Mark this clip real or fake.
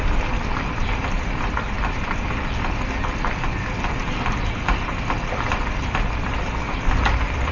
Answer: fake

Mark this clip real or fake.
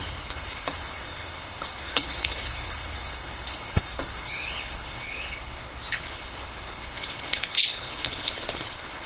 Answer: fake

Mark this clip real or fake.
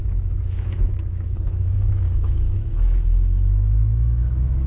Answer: fake